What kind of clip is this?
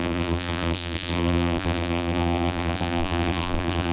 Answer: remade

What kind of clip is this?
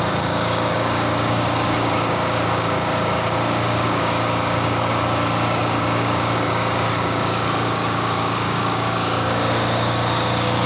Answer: remade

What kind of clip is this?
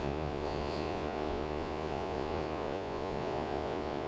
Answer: remade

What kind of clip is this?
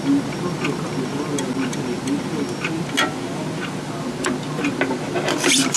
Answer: recorded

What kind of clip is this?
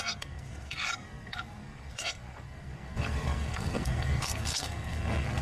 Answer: remade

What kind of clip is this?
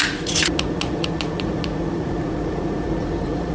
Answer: remade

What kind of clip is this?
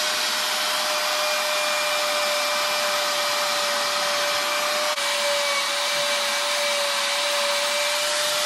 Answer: recorded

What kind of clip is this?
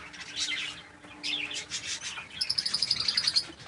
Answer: recorded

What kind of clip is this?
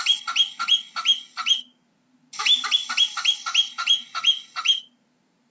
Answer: recorded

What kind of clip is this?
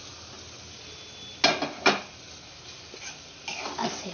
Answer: recorded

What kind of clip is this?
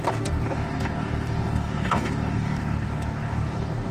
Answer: remade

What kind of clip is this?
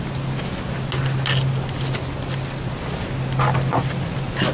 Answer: recorded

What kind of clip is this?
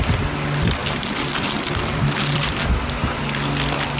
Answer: recorded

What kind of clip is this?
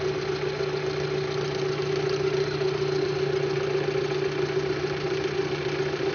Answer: recorded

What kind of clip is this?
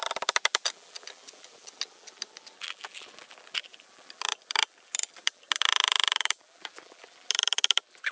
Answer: remade